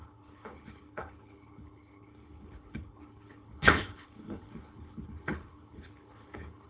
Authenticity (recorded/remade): remade